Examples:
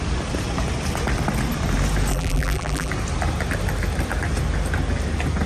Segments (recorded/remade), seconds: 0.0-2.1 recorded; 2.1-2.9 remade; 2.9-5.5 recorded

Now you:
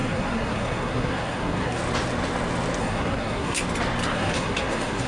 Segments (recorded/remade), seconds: 0.0-1.8 remade; 1.8-2.8 recorded; 2.8-3.6 remade; 3.6-4.1 recorded; 4.1-5.1 remade

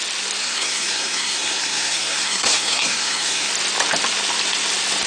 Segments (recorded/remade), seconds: 0.0-0.4 recorded; 0.4-3.5 remade; 3.5-5.1 recorded

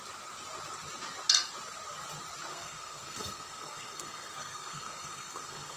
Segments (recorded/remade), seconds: 0.0-2.5 recorded; 2.5-5.8 remade

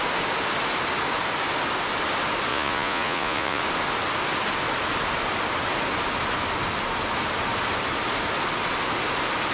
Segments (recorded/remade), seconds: 0.0-2.5 recorded; 2.5-3.6 remade; 3.6-9.5 recorded

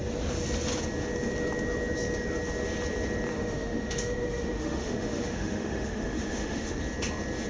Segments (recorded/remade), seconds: 0.0-3.3 recorded; 3.3-6.8 remade; 6.8-7.5 recorded